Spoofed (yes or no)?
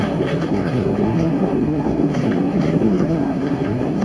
yes